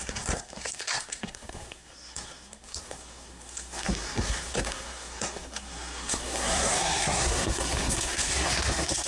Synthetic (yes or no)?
yes